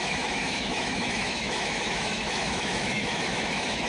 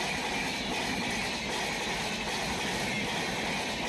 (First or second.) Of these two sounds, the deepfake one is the first